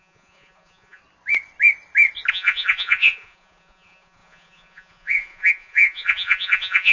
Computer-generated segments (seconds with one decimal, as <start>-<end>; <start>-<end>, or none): 0.0-1.0; 2.3-6.9